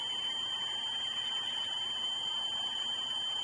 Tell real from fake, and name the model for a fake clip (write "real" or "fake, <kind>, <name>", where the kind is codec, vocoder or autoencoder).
fake, vocoder, BigVGAN v2